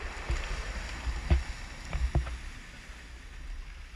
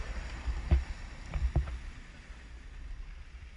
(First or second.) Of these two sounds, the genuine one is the first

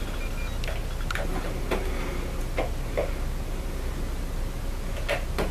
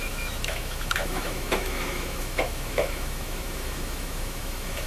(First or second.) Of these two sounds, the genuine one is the first